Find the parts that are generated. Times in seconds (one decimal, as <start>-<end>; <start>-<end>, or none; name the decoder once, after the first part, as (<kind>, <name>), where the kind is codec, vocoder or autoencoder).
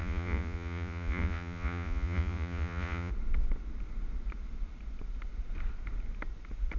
0.0-3.1 (vocoder, Vocos)